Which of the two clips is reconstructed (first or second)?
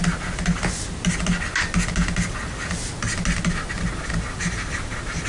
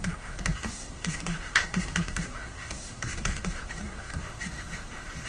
second